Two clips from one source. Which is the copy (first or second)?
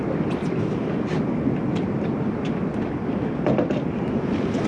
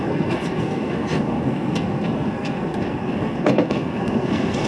second